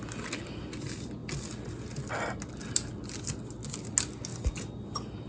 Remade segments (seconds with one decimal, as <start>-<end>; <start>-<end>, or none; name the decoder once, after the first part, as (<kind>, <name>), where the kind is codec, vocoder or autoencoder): none